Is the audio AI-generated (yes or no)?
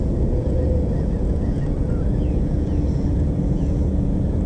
yes